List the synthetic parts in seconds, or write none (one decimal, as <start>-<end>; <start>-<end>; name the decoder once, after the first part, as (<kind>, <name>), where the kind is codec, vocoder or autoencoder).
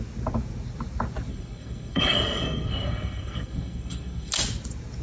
1.3-4.3 (codec, SNAC)